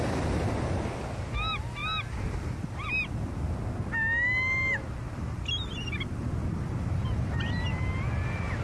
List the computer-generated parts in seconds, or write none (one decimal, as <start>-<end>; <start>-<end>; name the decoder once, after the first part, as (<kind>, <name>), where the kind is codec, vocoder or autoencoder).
none